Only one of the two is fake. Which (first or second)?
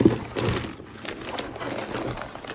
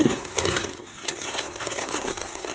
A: second